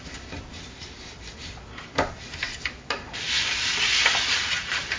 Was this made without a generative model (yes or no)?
yes